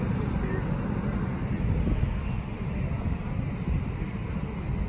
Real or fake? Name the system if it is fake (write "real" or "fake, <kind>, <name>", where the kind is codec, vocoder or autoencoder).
real